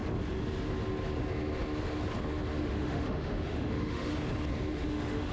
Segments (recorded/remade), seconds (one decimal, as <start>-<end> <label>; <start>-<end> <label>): 0.0-2.6 recorded; 2.6-4.1 remade; 4.1-4.7 recorded; 4.7-5.3 remade